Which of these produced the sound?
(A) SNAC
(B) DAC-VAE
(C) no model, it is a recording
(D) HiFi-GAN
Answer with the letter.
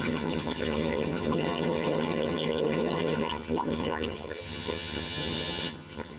D